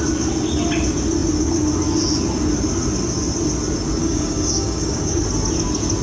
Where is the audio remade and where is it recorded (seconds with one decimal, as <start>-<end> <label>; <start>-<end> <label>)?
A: 0.0-4.0 recorded; 4.0-5.2 remade; 5.2-6.0 recorded